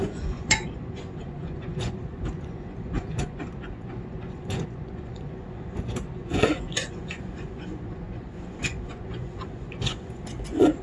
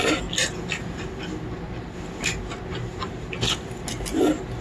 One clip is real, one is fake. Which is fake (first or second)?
first